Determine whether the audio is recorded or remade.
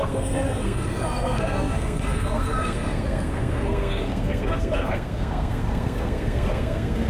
remade